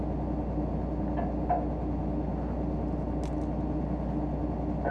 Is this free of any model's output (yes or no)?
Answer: yes